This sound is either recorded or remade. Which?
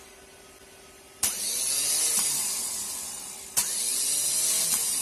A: recorded